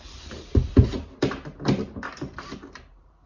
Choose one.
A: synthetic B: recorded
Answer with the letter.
A